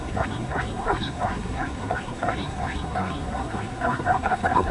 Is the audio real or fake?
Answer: fake